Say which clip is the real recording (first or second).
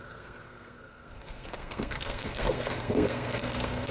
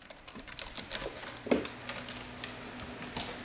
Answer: second